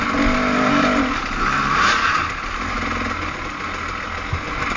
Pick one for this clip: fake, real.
real